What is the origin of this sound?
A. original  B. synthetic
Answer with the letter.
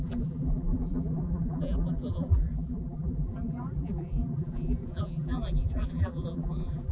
B